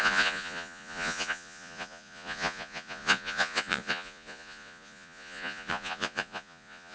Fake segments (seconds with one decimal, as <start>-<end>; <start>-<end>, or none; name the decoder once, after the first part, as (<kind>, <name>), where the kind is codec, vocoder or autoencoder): 0.0-6.9 (vocoder, Vocos)